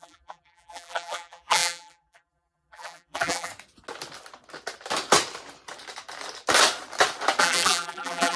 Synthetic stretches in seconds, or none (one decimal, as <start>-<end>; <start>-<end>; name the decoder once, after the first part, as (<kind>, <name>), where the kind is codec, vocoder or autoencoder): 0.0-3.5 (vocoder, BigVGAN v2); 7.4-8.4

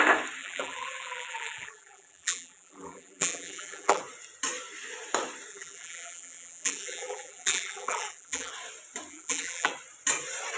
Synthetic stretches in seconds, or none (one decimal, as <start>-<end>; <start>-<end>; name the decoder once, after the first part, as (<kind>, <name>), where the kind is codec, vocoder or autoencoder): 0.4-4.0 (vocoder, BigVGAN v2); 5.5-8.5; 9.1-9.7

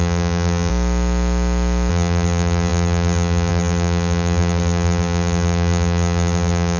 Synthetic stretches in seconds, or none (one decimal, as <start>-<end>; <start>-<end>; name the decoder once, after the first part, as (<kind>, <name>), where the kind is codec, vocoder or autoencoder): 0.0-0.7 (vocoder, BigVGAN v2); 1.9-6.8

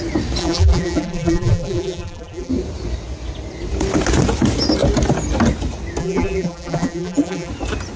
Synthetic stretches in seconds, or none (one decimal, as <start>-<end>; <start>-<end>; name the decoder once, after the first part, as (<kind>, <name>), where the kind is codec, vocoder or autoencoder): 0.4-2.5 (vocoder, BigVGAN v2); 6.0-7.5